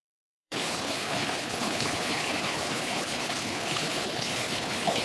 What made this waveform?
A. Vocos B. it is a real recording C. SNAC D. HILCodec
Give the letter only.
D